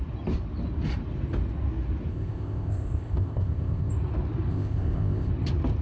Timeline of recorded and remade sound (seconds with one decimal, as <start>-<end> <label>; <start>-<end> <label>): 0.0-2.1 recorded; 2.1-3.9 remade; 3.9-4.5 recorded; 4.5-5.3 remade; 5.3-5.8 recorded